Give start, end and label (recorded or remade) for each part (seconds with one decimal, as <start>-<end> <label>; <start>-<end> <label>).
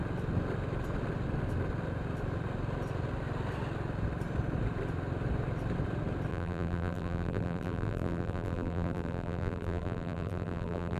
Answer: 0.0-6.3 recorded; 6.3-11.0 remade